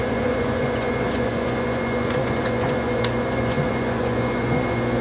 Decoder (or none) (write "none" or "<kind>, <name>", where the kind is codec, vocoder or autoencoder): vocoder, Vocos